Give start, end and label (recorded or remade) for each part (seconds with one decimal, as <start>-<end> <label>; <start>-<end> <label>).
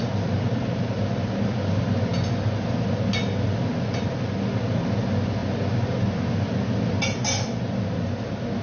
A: 0.0-8.6 recorded